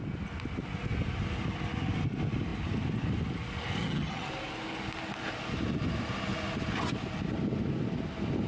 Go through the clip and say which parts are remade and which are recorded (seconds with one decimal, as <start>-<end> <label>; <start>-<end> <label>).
0.0-3.8 recorded; 3.8-4.3 remade; 4.3-8.5 recorded